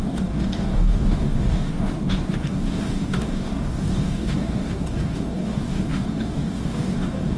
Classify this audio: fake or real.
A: fake